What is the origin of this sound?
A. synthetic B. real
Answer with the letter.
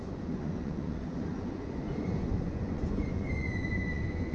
A